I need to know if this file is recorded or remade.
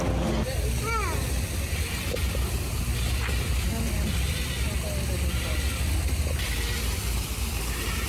recorded